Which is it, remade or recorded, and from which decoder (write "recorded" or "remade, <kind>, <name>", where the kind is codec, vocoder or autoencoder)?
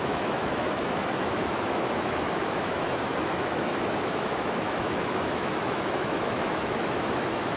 remade, autoencoder, DAC-VAE